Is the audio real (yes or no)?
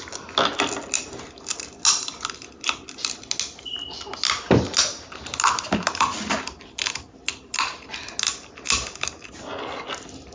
yes